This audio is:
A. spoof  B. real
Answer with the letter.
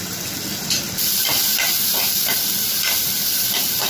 B